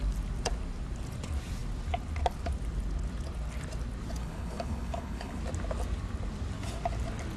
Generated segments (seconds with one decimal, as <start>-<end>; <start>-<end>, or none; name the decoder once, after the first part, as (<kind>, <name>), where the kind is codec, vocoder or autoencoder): 4.2-5.4 (codec, HILCodec)